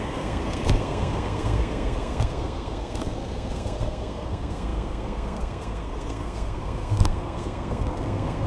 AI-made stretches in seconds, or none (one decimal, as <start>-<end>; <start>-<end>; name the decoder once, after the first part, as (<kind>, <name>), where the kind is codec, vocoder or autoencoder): 0.0-8.5 (codec, SNAC)

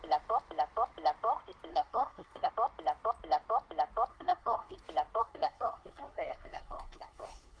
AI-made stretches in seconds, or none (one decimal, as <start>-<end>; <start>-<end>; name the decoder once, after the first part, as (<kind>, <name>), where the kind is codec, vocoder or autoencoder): 1.7-2.5 (codec, SNAC); 4.1-4.8; 5.2-7.6

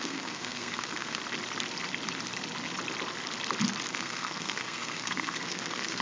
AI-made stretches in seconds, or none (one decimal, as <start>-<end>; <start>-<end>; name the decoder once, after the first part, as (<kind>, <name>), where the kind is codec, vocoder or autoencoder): 0.0-1.2 (codec, SNAC); 3.9-6.0

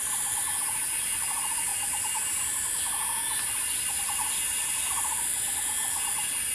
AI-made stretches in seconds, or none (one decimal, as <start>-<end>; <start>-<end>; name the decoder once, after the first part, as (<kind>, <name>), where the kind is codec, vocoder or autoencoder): none

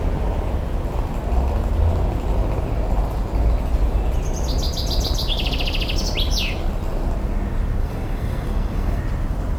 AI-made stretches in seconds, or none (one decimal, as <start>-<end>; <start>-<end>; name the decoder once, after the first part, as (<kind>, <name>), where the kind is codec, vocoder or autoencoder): 7.8-9.0 (codec, SNAC)

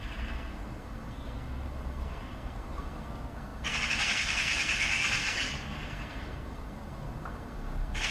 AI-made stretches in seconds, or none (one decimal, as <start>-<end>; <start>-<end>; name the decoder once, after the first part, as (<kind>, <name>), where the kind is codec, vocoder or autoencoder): 0.0-8.1 (codec, SNAC)

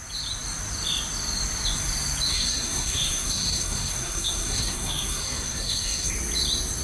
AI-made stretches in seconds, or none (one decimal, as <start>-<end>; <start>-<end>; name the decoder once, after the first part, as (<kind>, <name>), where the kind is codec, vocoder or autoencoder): 2.3-6.1 (codec, SNAC)

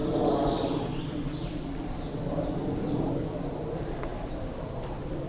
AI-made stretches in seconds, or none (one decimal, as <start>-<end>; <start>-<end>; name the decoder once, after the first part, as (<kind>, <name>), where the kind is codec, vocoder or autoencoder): none